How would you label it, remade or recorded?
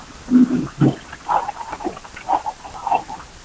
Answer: recorded